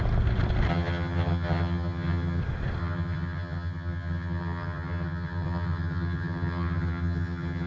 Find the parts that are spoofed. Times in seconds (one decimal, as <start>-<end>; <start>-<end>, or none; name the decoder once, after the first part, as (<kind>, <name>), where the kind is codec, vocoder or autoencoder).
0.7-2.4 (vocoder, HiFi-GAN); 2.8-7.7